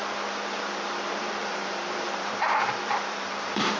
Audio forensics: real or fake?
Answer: fake